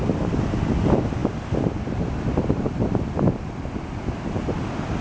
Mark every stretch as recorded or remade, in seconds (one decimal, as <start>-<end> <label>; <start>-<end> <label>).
0.0-5.0 recorded